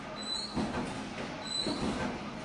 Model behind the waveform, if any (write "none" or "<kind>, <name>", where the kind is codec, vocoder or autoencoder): none